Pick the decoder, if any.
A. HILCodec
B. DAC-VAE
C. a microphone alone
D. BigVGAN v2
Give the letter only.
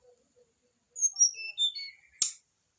C